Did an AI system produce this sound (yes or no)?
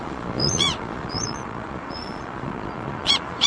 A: yes